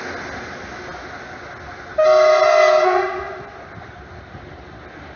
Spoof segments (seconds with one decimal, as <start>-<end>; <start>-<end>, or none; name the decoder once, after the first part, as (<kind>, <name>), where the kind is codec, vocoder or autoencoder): none